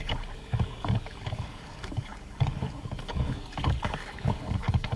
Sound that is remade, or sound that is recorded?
remade